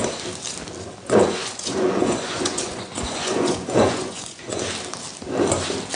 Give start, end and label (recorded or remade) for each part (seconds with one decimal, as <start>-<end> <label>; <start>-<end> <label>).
0.0-1.2 recorded; 1.2-4.6 remade; 4.6-6.0 recorded